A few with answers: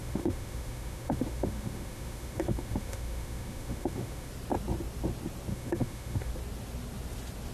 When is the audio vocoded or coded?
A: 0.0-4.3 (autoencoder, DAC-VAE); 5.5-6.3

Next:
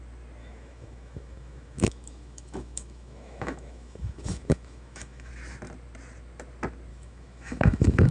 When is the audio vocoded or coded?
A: 0.4-5.3 (autoencoder, DAC-VAE); 6.9-8.1

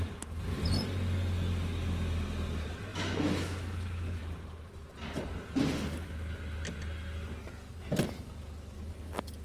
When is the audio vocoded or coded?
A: 2.9-4.2 (autoencoder, DAC-VAE)

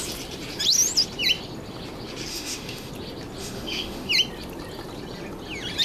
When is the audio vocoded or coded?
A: 2.3-2.9 (autoencoder, DAC-VAE); 3.4-4.1